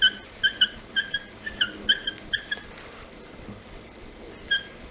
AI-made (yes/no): no